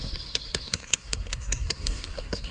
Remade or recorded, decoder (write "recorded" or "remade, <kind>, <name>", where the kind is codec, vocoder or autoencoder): remade, codec, SNAC